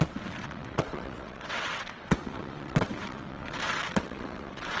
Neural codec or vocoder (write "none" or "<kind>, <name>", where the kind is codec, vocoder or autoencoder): vocoder, WaveNeXt